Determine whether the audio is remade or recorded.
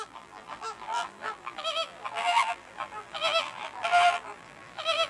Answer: remade